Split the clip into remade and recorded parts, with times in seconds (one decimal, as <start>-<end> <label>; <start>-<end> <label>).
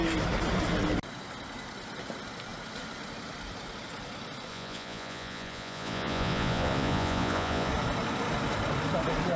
0.0-4.5 recorded; 4.5-7.7 remade; 7.7-9.4 recorded